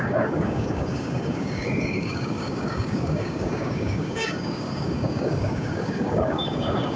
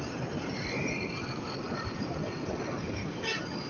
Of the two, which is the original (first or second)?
second